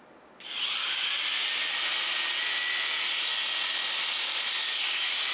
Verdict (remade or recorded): recorded